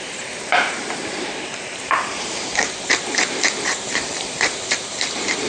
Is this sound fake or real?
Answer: fake